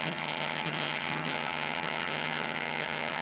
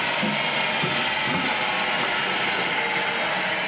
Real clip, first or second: second